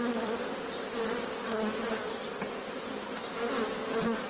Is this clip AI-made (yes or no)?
no